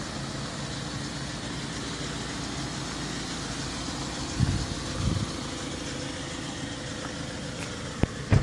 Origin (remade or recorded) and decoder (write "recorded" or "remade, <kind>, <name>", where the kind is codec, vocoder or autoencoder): recorded